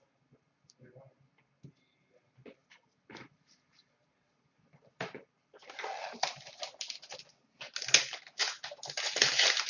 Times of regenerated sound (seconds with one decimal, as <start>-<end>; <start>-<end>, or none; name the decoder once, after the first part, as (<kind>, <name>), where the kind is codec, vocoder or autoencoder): 2.6-6.5 (vocoder, BigVGAN v2)